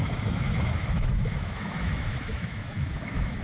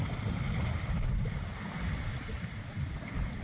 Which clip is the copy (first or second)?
first